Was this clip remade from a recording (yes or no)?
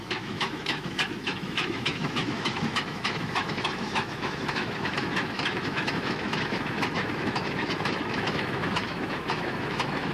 yes